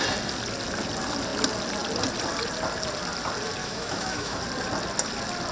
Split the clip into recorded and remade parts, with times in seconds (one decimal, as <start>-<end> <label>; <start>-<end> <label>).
0.0-3.6 recorded; 3.6-4.4 remade; 4.4-5.5 recorded